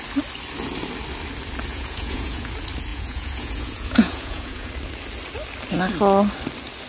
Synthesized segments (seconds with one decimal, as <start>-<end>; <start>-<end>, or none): 1.7-2.5; 2.9-4.7